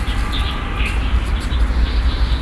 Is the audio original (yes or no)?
yes